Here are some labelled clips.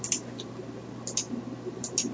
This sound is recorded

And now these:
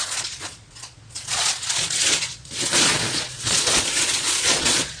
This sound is remade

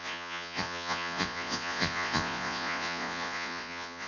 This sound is remade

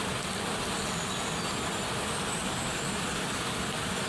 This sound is recorded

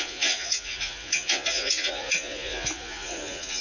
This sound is remade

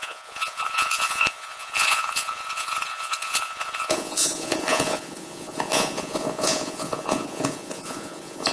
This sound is remade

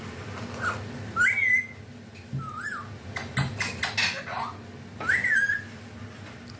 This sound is recorded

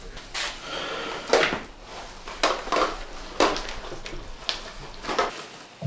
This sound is recorded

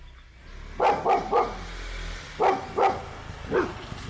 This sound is recorded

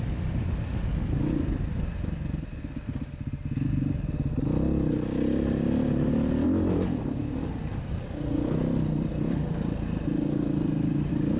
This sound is recorded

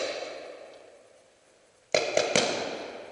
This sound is recorded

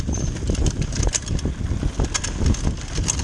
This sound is recorded